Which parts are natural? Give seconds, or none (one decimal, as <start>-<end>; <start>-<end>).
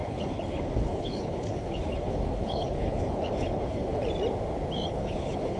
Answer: 4.0-4.9